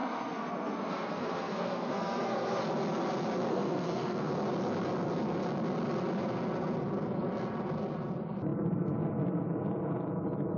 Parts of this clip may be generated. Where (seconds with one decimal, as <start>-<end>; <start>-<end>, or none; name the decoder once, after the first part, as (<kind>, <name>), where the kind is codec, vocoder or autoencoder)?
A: 0.0-2.6 (codec, SNAC); 3.5-4.3